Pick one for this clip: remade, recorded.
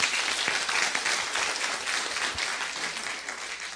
recorded